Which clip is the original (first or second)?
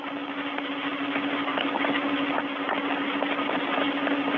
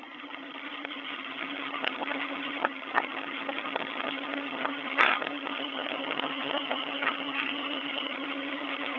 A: first